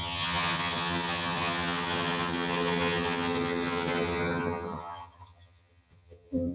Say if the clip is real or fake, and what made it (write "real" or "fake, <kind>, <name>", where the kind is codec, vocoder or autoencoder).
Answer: fake, vocoder, HiFi-GAN